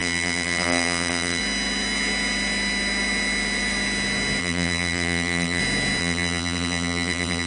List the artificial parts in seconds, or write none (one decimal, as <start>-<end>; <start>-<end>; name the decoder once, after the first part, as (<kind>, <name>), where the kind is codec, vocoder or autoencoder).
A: 0.0-1.4 (vocoder, BigVGAN v2); 4.4-5.6; 6.0-7.5